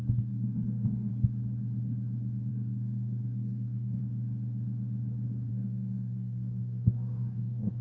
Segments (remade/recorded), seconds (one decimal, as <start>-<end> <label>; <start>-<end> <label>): 0.0-1.1 remade; 1.1-2.5 recorded; 2.5-4.0 remade; 4.0-5.5 recorded; 5.5-7.8 remade